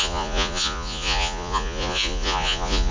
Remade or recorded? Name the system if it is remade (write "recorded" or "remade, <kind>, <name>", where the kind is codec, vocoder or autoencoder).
remade, vocoder, Vocos